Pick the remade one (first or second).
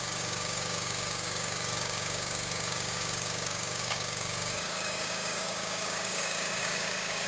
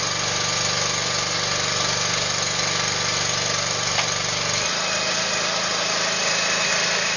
first